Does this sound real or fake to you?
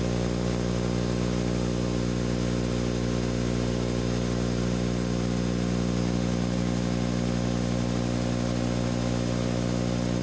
real